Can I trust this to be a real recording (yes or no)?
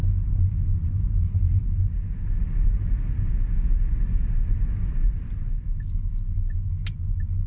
yes